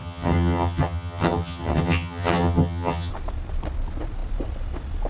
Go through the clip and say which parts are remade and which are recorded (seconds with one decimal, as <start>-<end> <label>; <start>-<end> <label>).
0.0-3.1 remade; 3.1-5.1 recorded